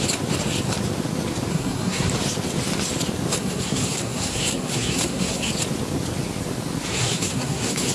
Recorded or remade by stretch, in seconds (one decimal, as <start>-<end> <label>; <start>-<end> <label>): 0.0-1.5 recorded; 1.5-2.1 remade; 2.1-3.4 recorded; 3.4-5.5 remade; 5.5-6.9 recorded; 6.9-7.9 remade